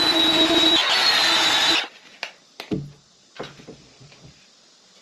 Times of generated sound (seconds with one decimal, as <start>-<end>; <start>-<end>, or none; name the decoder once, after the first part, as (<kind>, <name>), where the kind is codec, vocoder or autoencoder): none